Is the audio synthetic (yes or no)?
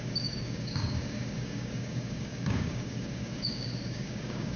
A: yes